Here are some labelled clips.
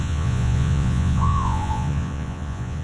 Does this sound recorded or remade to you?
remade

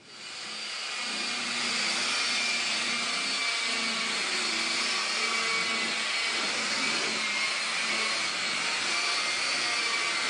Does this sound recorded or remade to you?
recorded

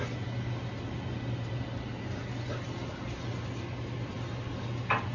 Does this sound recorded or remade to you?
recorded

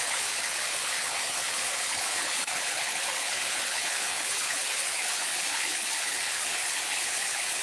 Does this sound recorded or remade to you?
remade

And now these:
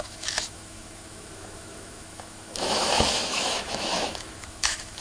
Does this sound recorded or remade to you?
remade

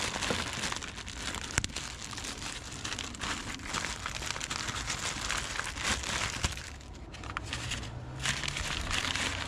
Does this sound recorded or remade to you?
recorded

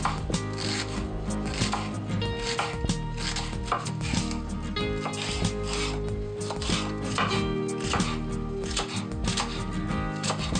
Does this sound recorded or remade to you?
recorded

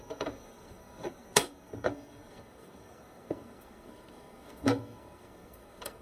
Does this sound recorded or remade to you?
remade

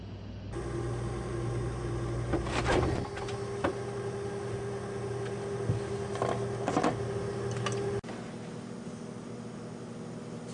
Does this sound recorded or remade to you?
recorded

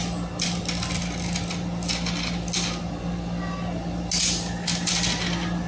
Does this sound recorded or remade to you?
recorded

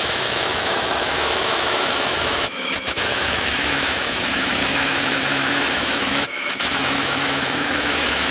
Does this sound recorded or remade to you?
remade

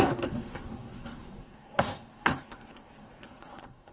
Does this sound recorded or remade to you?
remade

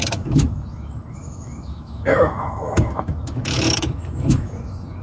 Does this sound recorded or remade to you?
remade